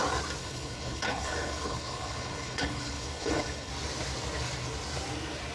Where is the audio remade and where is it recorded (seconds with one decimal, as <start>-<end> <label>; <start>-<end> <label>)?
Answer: 0.0-0.4 recorded; 0.4-3.7 remade; 3.7-5.5 recorded